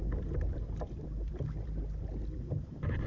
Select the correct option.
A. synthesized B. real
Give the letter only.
A